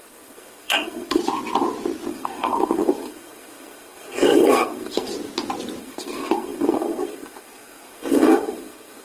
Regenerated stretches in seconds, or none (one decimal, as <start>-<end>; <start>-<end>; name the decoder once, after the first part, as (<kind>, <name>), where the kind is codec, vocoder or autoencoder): 0.0-1.2 (codec, SNAC); 2.1-5.1; 5.8-9.0